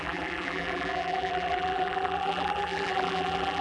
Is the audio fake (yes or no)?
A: yes